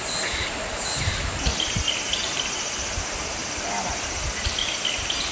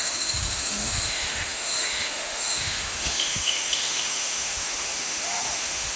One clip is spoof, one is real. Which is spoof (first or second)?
second